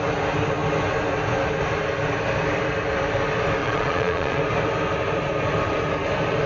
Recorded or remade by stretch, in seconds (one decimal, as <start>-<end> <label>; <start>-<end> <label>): 0.0-3.6 recorded; 3.6-4.4 remade; 4.4-6.5 recorded